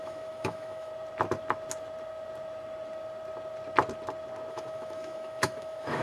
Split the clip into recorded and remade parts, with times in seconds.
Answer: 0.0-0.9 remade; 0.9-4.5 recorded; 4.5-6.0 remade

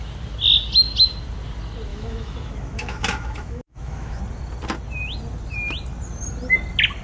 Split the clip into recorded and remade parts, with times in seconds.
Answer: 0.0-1.9 recorded; 1.9-4.2 remade; 4.2-7.0 recorded

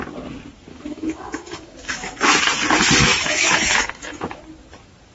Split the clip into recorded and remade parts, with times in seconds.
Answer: 0.0-0.7 recorded; 0.7-2.4 remade; 2.4-3.0 recorded; 3.0-4.4 remade; 4.4-5.1 recorded

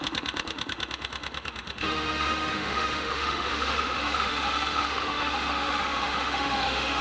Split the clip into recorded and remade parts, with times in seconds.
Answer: 0.0-7.0 remade